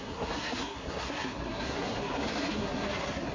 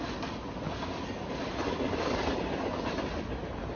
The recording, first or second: second